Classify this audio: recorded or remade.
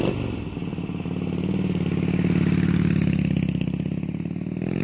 recorded